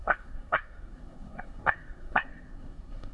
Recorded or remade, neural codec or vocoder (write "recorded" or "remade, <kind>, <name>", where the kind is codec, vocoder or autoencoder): remade, codec, SNAC